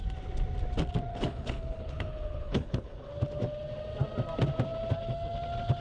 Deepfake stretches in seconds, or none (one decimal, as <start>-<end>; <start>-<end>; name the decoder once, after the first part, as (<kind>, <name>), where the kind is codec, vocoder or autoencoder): 1.1-3.1 (codec, HILCodec)